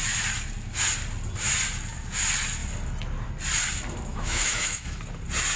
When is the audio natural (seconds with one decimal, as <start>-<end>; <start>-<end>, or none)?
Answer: 0.0-4.1; 5.0-5.6